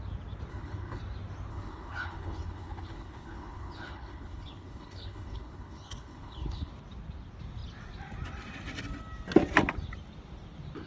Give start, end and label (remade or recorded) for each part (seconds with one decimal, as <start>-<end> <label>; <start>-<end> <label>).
0.0-0.5 recorded; 0.5-1.0 remade; 1.0-1.5 recorded; 1.5-6.7 remade; 6.7-10.9 recorded

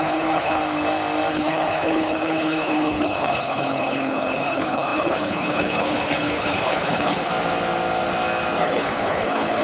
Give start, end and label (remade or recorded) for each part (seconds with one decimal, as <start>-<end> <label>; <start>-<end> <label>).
0.0-0.6 remade; 0.6-1.3 recorded; 1.3-7.3 remade; 7.3-8.6 recorded; 8.6-9.6 remade

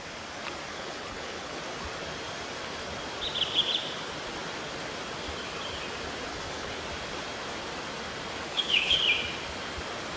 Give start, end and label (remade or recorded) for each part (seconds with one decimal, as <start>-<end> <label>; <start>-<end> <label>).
0.0-0.7 recorded; 0.7-1.6 remade; 1.6-6.3 recorded; 6.3-6.8 remade; 6.8-8.5 recorded; 8.5-9.0 remade; 9.0-10.2 recorded

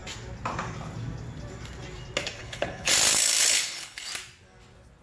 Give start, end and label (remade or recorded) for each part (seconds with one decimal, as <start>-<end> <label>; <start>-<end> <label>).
0.0-2.4 recorded; 2.4-2.9 remade; 2.9-3.4 recorded; 3.4-4.1 remade; 4.1-5.0 recorded

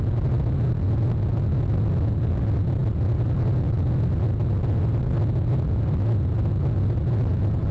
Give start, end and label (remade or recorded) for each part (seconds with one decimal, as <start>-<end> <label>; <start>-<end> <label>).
0.0-7.7 recorded

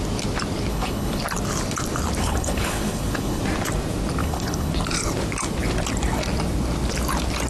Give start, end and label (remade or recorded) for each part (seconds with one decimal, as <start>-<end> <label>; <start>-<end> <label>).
0.0-0.7 recorded; 0.7-1.2 remade; 1.2-2.2 recorded; 2.2-3.4 remade; 3.4-4.2 recorded; 4.2-4.7 remade; 4.7-7.5 recorded